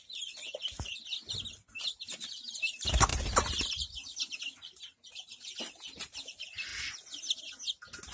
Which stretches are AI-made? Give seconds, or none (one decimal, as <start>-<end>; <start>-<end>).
3.1-4.4